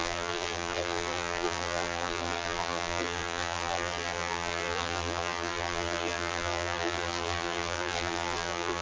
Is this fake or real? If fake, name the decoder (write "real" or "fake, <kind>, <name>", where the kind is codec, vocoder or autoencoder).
fake, vocoder, BigVGAN v2